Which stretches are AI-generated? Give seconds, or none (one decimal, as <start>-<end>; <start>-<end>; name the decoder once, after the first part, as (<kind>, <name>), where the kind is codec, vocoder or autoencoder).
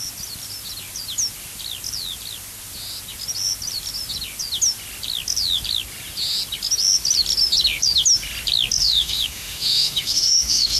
8.8-10.8 (autoencoder, DAC-VAE)